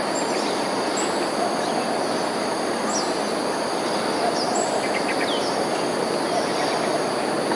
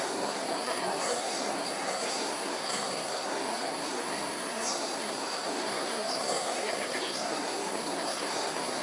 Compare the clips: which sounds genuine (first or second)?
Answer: first